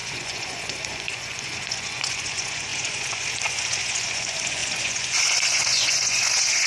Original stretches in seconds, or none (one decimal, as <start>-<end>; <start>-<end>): none